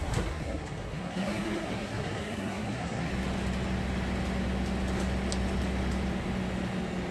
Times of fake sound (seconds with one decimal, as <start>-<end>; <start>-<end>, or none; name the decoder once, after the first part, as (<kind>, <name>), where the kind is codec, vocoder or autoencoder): 0.0-3.1 (codec, SNAC)